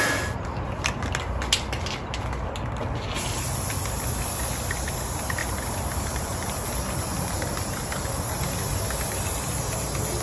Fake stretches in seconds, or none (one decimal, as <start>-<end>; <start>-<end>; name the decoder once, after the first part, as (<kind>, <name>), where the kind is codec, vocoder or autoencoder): 5.4-8.1 (vocoder, BigVGAN v2)